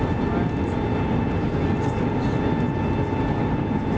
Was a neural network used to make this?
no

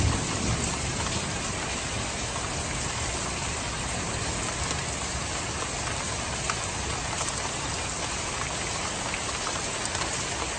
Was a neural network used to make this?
no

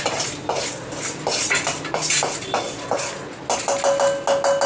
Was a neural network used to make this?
no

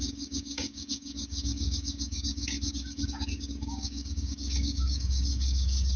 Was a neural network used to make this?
yes